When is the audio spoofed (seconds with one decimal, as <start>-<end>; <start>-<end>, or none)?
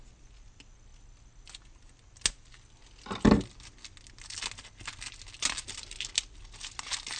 none